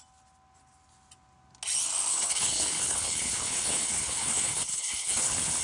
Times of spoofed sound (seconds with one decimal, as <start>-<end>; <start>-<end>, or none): 2.1-5.6